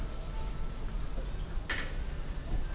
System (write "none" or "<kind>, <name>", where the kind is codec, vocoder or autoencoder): none